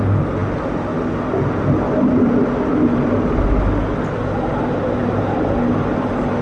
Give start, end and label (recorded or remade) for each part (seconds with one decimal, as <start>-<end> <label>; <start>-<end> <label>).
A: 0.0-6.4 recorded